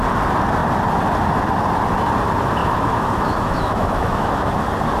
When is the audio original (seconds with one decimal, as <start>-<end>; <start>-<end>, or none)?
0.0-2.6; 4.5-5.0